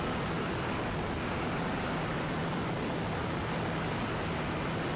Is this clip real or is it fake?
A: real